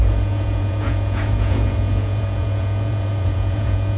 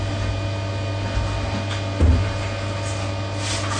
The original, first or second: second